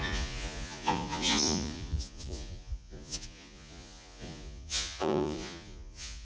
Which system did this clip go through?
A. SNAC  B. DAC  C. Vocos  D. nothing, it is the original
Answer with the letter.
C